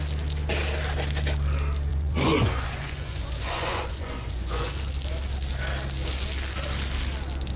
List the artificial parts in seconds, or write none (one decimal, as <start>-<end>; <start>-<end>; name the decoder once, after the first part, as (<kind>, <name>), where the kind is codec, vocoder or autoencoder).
1.9-4.7 (vocoder, Vocos)